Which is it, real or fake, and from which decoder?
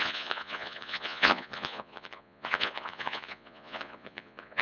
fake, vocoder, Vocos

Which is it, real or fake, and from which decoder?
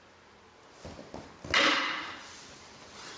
real